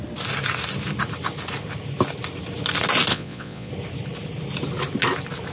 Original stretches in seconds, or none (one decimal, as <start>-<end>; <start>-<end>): 0.0-3.1; 3.7-5.5